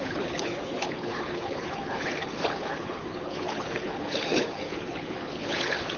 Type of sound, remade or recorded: remade